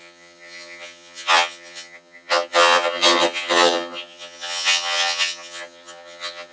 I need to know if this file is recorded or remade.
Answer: remade